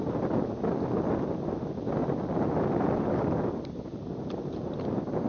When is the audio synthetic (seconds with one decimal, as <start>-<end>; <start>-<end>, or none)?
none